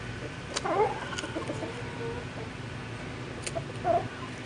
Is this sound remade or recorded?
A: recorded